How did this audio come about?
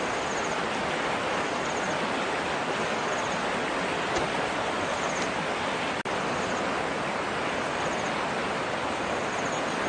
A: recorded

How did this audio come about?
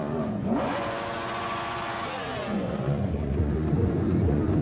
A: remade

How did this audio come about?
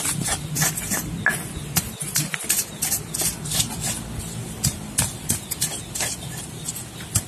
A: recorded